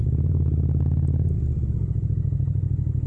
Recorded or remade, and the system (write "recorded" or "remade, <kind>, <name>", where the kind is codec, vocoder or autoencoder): recorded